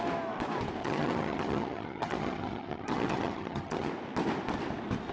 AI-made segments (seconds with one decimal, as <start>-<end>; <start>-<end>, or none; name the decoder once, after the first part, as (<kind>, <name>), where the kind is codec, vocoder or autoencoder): 0.8-3.9 (vocoder, HiFi-GAN)